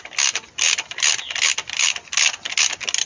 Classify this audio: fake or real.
real